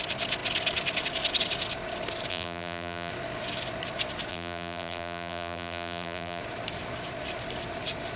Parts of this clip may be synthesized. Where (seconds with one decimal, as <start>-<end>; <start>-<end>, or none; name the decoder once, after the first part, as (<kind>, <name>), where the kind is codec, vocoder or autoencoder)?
2.3-3.1 (vocoder, BigVGAN v2); 4.3-6.4